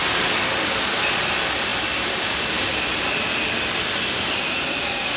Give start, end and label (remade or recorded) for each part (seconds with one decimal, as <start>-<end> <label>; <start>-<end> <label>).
0.0-5.2 recorded